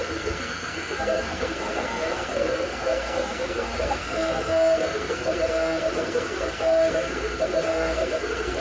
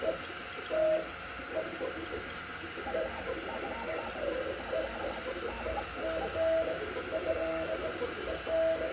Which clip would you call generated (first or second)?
first